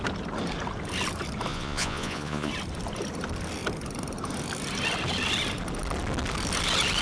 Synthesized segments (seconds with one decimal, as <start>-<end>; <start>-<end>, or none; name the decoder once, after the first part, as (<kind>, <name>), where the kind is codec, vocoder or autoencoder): 1.5-2.5 (vocoder, Vocos)